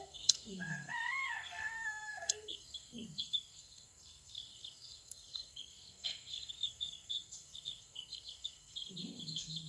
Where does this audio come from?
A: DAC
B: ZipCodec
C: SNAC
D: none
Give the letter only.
C